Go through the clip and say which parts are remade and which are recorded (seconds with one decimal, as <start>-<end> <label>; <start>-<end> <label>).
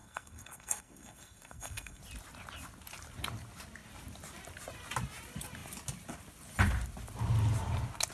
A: 0.0-2.0 remade; 2.0-8.1 recorded